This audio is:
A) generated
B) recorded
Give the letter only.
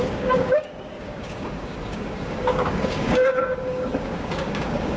A